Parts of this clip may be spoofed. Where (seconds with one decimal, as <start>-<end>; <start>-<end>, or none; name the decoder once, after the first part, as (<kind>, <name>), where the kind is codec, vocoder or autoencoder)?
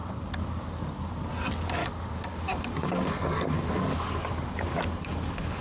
0.0-1.1 (codec, DAC); 1.8-5.6